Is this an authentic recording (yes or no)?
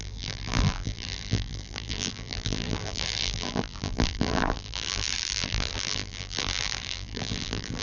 no